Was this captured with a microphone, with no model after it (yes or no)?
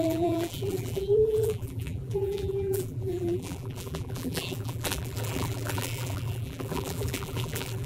no